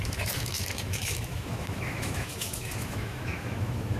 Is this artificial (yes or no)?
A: yes